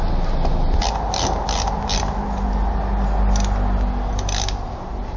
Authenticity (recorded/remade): recorded